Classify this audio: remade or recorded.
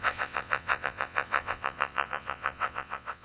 remade